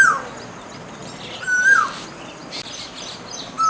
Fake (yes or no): no